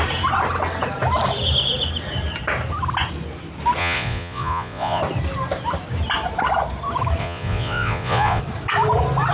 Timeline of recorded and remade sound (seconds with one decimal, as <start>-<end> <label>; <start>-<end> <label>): 0.0-3.8 recorded; 3.8-5.0 remade; 5.0-7.2 recorded; 7.2-8.4 remade; 8.4-9.3 recorded